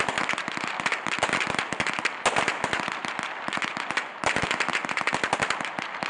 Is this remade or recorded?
recorded